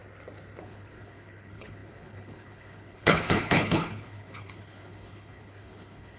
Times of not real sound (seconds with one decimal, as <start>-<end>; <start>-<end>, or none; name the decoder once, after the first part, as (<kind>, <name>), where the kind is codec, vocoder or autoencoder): 0.6-6.2 (codec, HILCodec)